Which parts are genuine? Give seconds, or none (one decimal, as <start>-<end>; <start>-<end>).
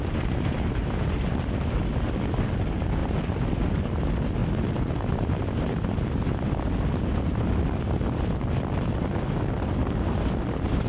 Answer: 0.0-10.9